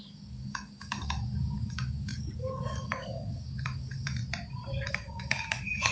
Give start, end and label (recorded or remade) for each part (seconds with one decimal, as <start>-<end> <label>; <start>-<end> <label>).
0.0-4.2 remade; 4.2-4.9 recorded; 4.9-5.9 remade